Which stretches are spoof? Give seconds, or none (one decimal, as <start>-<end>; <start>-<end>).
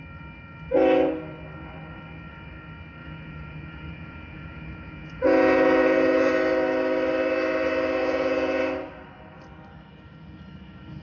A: 3.0-6.3; 8.0-8.6